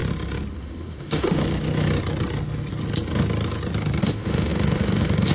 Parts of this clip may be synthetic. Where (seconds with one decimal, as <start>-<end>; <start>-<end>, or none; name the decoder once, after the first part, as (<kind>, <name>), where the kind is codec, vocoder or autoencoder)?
0.5-1.4 (autoencoder, DAC-VAE); 4.0-5.3